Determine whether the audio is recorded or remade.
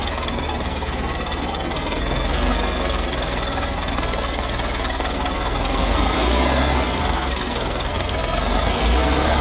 remade